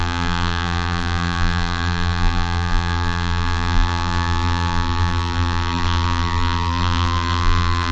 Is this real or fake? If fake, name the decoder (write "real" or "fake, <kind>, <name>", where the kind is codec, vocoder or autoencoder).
fake, vocoder, BigVGAN v2